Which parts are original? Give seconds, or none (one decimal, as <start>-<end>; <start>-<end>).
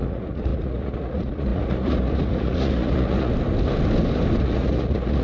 3.3-4.4